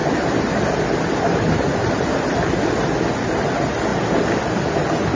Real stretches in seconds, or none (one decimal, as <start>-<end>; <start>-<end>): 0.0-5.2